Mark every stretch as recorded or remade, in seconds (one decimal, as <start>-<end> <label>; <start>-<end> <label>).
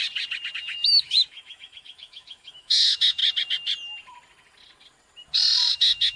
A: 0.0-0.6 recorded; 0.6-3.2 remade; 3.2-5.7 recorded; 5.7-6.2 remade